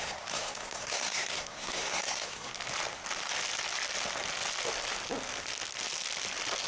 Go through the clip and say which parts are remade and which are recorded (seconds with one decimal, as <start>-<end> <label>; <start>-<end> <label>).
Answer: 0.0-2.5 remade; 2.5-6.7 recorded

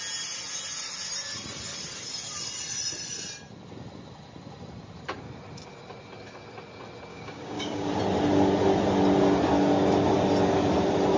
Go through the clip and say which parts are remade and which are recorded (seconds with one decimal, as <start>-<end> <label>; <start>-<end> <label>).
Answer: 0.0-7.1 recorded; 7.1-7.9 remade; 7.9-11.2 recorded

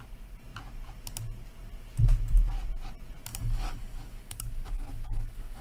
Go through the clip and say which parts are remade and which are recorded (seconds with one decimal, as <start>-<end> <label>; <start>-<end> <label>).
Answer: 0.0-3.3 recorded; 3.3-5.6 remade

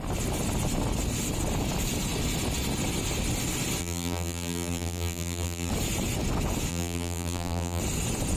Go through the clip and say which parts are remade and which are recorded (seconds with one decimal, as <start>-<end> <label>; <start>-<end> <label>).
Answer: 0.0-3.8 recorded; 3.8-5.7 remade; 5.7-6.7 recorded; 6.7-7.8 remade; 7.8-8.4 recorded

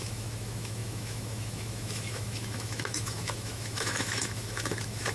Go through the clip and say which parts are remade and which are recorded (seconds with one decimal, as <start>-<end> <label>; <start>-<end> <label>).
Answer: 0.0-5.1 remade

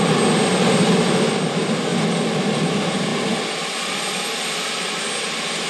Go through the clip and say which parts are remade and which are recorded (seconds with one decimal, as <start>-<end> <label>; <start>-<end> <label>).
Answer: 0.0-5.7 recorded